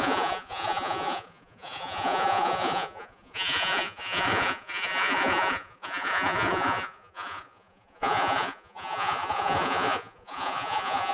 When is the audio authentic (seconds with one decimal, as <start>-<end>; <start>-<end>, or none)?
none